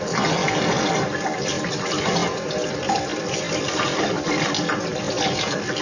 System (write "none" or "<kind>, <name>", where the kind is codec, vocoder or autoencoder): none